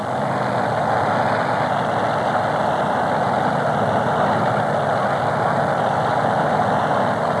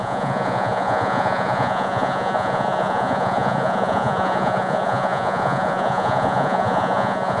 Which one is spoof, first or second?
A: second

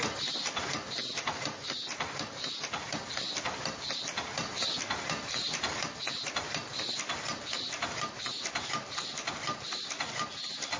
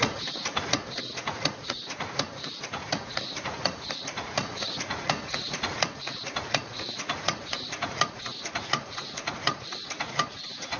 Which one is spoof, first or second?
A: second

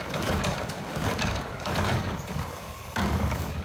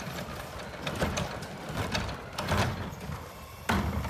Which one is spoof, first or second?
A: first